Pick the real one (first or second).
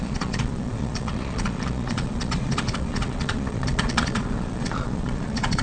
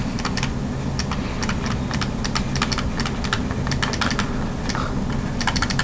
second